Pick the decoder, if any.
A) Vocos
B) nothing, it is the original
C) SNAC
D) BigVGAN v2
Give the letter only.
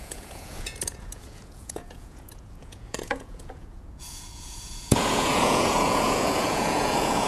A